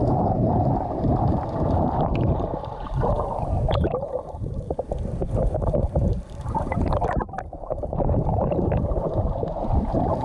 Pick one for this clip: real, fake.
fake